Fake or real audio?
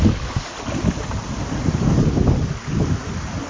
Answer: real